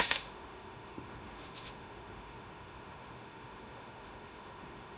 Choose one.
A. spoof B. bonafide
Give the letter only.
A